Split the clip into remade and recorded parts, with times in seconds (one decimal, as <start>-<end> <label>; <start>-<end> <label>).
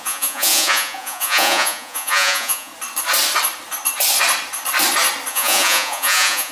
0.0-2.7 remade; 2.7-5.3 recorded; 5.3-6.5 remade